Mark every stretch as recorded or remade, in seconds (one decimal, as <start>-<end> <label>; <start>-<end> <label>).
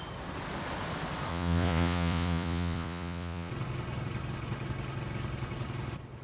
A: 0.0-1.3 recorded; 1.3-3.5 remade; 3.5-6.2 recorded